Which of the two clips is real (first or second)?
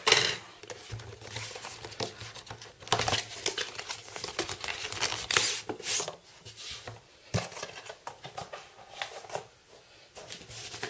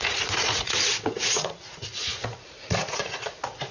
first